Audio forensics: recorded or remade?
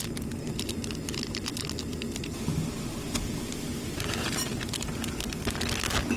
recorded